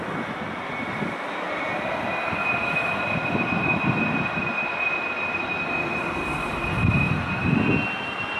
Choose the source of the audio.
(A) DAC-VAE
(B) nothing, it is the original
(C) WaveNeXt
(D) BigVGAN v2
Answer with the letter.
B